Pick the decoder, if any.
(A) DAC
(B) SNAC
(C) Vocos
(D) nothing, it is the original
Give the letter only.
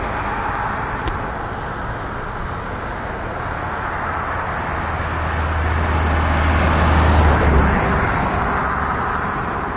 D